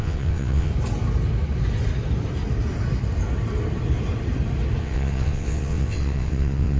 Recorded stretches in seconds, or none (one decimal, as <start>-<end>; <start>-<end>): 0.7-4.8